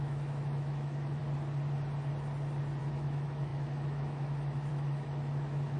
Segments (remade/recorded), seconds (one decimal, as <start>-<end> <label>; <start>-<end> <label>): 0.0-1.2 remade; 1.2-2.8 recorded; 2.8-5.8 remade